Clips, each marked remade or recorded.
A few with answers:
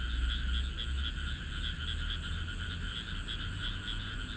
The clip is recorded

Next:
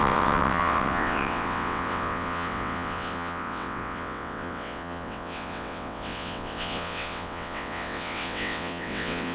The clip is remade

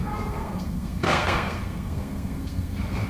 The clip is remade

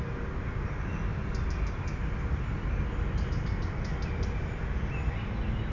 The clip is recorded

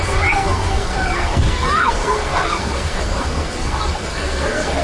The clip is remade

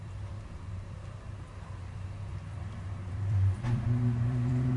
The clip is remade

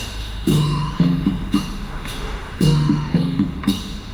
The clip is remade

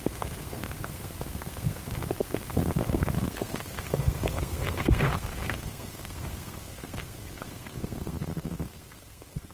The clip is remade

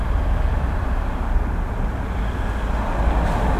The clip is recorded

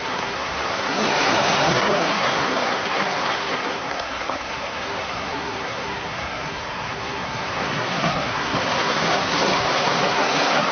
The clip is remade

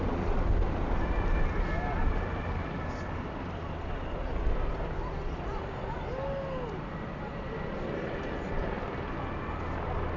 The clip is recorded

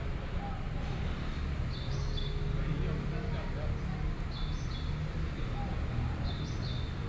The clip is recorded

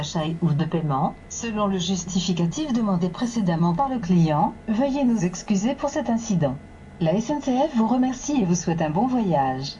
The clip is recorded